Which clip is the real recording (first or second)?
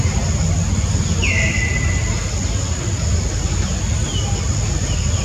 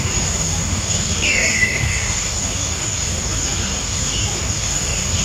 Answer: first